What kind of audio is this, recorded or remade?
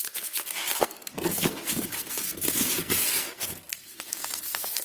remade